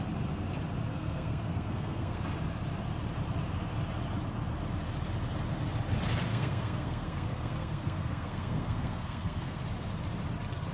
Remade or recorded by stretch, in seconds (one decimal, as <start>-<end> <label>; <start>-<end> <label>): 0.0-0.9 recorded; 0.9-2.2 remade; 2.2-6.3 recorded; 6.3-9.6 remade; 9.6-10.7 recorded